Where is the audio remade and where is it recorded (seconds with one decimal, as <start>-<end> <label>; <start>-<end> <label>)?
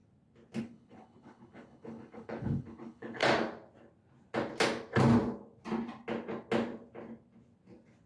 0.0-0.6 recorded; 0.6-3.2 remade; 3.2-8.1 recorded